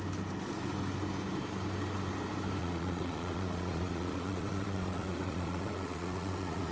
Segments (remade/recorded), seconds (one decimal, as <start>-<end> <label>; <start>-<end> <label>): 0.0-2.6 recorded; 2.6-6.7 remade